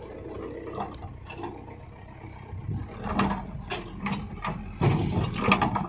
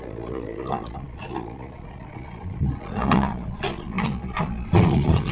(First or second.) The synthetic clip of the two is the second